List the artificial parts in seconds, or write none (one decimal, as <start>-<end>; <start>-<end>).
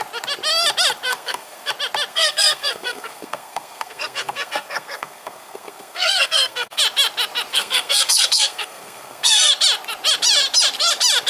1.1-1.7; 2.1-6.8; 7.5-9.5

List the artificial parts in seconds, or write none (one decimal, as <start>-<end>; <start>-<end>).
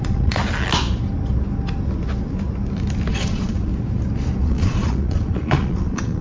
0.0-0.4; 3.1-3.7; 4.4-6.2